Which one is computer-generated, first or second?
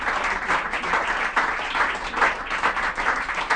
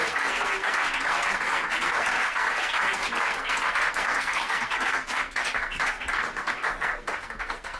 second